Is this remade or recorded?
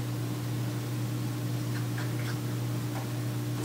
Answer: recorded